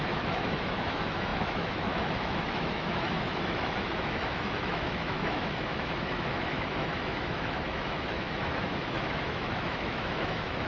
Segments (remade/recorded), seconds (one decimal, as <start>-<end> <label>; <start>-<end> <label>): 0.0-10.7 remade